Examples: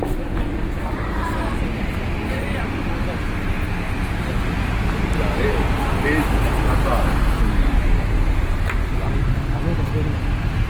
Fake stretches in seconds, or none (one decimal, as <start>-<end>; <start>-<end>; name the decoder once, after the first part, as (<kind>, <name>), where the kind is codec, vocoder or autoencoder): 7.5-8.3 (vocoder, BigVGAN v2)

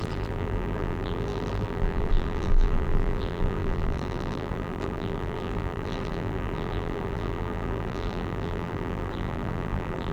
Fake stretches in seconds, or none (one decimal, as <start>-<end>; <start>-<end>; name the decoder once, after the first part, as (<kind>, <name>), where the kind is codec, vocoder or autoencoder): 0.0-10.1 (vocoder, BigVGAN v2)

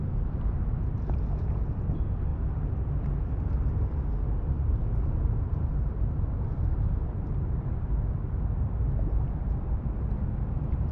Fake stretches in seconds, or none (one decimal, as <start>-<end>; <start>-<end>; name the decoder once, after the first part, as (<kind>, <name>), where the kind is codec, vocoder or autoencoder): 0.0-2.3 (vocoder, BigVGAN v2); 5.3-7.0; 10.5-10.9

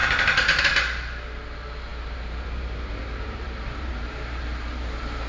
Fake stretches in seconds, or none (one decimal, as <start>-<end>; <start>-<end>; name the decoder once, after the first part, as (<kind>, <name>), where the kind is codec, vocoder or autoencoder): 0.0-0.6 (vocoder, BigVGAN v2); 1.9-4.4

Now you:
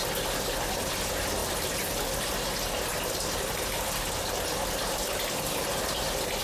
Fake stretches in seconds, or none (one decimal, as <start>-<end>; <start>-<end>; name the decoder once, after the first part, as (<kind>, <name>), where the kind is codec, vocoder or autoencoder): none

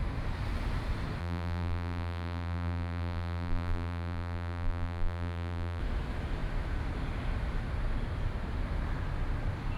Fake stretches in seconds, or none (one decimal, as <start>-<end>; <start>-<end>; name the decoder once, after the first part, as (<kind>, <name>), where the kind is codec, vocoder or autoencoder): 1.2-5.8 (vocoder, BigVGAN v2)

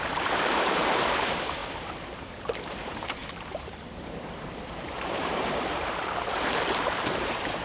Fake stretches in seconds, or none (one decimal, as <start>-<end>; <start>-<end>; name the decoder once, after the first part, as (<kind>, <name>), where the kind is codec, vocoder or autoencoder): 0.0-7.6 (vocoder, BigVGAN v2)

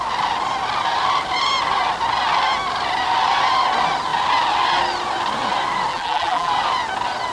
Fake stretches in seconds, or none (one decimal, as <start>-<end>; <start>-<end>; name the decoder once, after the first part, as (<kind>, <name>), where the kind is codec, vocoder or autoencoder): 5.9-6.5 (vocoder, BigVGAN v2)